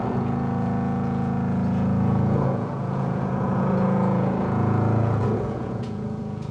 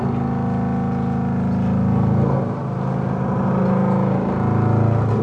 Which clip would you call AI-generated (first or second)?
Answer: first